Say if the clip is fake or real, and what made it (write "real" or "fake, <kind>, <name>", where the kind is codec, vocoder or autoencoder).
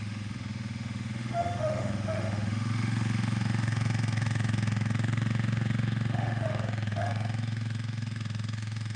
fake, autoencoder, DAC-VAE